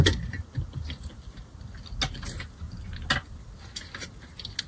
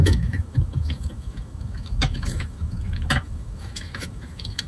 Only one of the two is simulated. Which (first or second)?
second